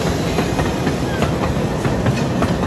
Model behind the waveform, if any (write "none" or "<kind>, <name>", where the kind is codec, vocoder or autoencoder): none